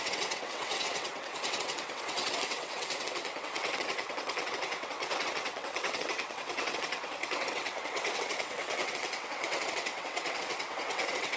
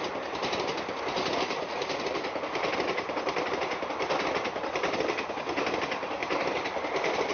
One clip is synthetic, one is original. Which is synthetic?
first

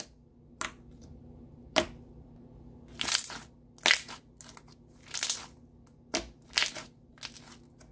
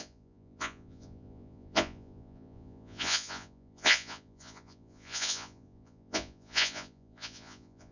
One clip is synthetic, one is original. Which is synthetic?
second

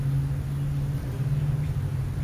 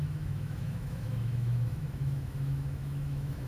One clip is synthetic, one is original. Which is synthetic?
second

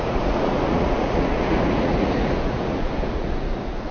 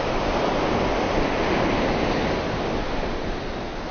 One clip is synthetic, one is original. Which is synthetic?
first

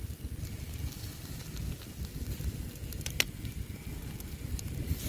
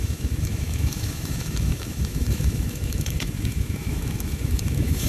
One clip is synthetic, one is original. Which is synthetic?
second